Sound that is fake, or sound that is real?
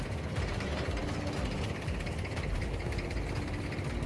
real